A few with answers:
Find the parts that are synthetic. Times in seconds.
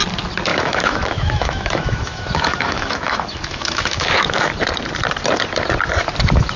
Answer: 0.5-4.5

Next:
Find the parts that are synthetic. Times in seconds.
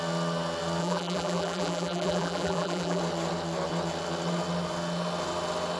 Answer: 0.8-3.0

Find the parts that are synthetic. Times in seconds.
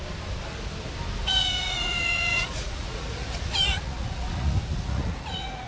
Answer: 1.2-5.7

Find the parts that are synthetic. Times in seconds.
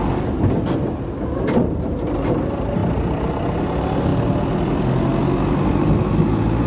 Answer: none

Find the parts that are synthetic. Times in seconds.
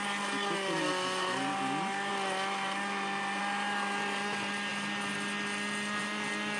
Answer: none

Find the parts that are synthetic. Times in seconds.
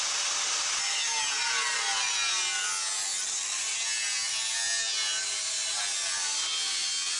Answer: none